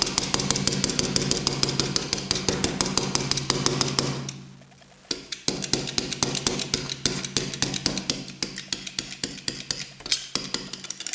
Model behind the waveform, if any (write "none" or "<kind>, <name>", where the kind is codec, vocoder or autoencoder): none